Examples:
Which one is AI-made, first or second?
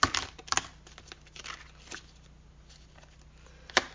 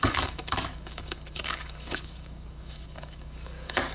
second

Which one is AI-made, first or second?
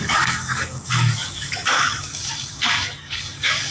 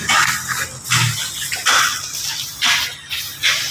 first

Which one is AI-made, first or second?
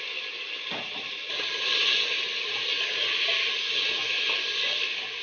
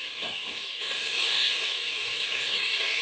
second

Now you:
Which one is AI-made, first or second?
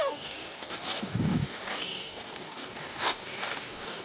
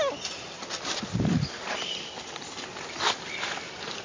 first